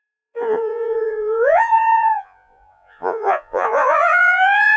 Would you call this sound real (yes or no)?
no